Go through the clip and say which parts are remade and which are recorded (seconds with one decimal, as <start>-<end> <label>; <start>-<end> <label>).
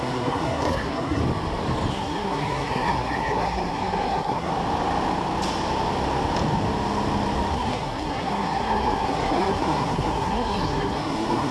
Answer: 0.0-1.2 remade; 1.2-1.9 recorded; 1.9-4.5 remade; 4.5-7.5 recorded; 7.5-11.5 remade